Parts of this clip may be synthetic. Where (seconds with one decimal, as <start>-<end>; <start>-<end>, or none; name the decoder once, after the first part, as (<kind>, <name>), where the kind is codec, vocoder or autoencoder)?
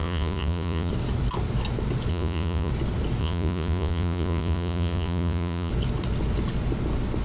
0.0-0.9 (vocoder, Vocos); 2.1-2.7; 3.2-5.7